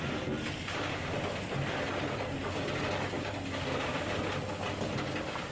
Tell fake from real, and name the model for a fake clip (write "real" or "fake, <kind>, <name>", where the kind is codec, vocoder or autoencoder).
real